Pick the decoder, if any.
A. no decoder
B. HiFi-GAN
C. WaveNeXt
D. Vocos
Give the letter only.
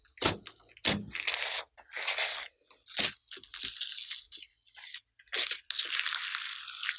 A